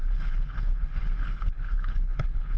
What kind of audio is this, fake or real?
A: fake